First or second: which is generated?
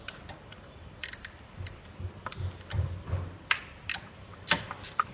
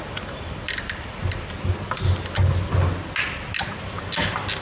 first